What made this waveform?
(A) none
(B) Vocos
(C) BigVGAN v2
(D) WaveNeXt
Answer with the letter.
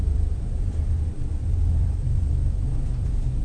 C